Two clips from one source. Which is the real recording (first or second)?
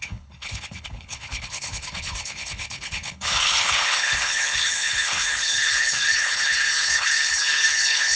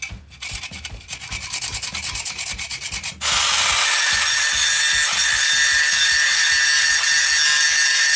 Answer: second